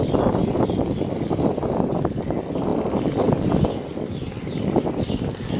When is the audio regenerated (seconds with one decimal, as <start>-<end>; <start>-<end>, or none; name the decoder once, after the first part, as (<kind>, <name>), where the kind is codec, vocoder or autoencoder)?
none